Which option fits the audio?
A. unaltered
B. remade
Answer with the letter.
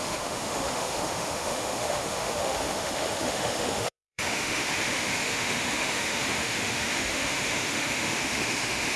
B